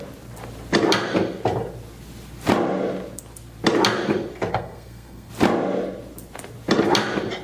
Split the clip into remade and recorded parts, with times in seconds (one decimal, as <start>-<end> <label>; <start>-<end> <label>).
0.0-4.5 recorded; 4.5-5.3 remade; 5.3-7.4 recorded